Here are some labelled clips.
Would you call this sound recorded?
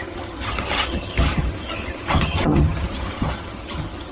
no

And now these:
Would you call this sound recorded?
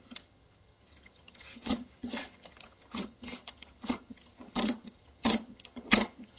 no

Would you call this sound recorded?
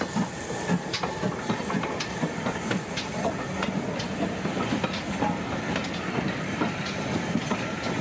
yes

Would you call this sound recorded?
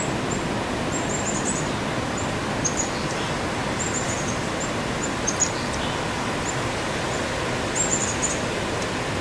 yes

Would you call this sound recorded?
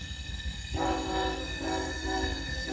no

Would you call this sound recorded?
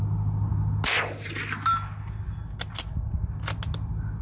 yes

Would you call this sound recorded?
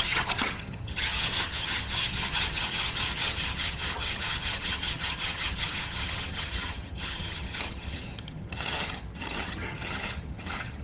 no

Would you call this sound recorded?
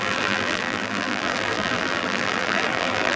no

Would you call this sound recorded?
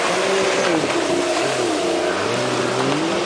yes